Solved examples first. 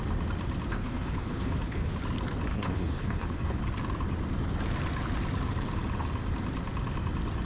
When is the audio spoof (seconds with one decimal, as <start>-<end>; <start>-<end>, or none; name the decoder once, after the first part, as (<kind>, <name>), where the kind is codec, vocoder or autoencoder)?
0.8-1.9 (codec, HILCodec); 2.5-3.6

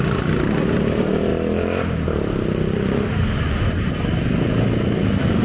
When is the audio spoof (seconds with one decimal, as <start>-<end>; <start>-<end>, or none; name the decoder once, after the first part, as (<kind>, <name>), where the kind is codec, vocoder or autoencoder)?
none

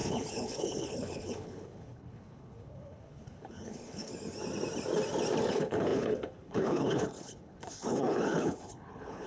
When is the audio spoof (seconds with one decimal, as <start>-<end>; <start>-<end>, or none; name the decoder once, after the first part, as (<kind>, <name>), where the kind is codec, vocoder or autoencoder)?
0.0-4.1 (codec, HILCodec); 5.5-9.3

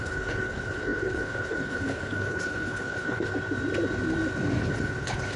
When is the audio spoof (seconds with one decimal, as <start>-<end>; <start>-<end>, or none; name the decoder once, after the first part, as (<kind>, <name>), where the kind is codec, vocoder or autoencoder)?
0.0-3.3 (codec, HILCodec); 4.6-5.4